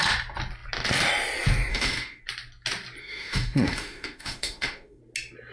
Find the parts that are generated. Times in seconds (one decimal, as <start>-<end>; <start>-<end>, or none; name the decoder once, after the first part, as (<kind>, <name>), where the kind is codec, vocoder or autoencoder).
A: 1.7-2.2 (autoencoder, DAC-VAE); 3.0-5.0